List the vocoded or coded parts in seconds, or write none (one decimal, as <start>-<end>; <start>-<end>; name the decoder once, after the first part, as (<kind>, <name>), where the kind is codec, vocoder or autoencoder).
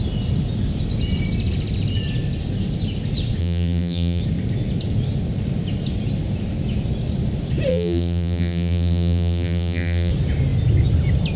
3.4-4.2 (vocoder, BigVGAN v2); 7.7-10.1